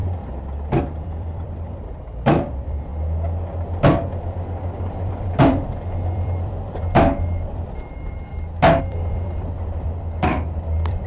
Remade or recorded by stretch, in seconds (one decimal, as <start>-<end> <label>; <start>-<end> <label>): 0.0-0.8 recorded; 0.8-2.9 remade; 2.9-4.7 recorded; 4.7-8.3 remade; 8.3-8.8 recorded; 8.8-11.1 remade